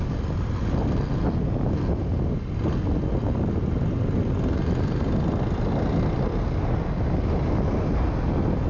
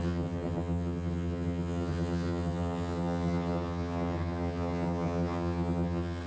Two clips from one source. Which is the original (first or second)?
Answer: first